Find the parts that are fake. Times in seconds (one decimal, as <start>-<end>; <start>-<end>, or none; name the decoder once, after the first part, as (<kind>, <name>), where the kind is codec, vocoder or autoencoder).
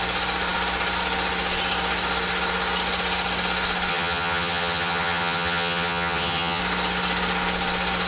3.9-6.6 (vocoder, HiFi-GAN)